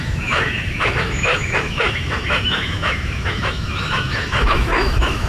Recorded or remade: remade